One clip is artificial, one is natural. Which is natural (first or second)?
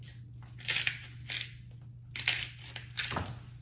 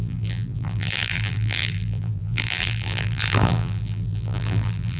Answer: first